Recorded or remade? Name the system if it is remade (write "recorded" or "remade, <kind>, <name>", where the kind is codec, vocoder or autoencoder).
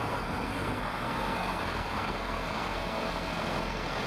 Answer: remade, codec, SNAC